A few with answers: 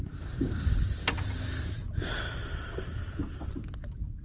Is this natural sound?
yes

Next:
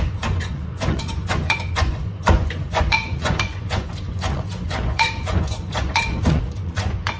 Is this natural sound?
no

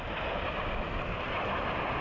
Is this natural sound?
yes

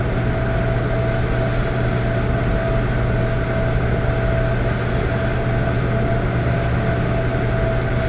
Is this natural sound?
yes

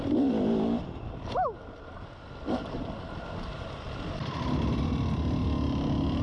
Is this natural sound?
yes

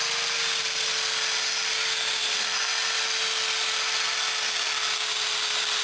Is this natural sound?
yes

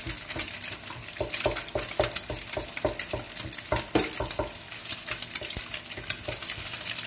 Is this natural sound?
yes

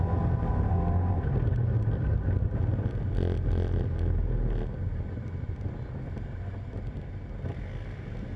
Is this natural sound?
yes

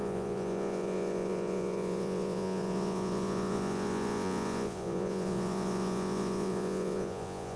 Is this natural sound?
no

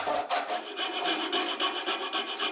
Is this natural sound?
yes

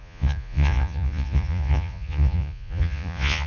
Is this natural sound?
no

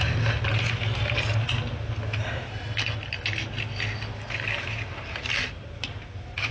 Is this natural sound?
yes